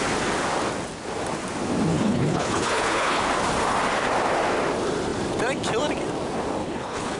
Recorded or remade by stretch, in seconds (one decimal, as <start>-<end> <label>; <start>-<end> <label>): 0.0-1.9 recorded; 1.9-3.2 remade; 3.2-6.6 recorded; 6.6-7.2 remade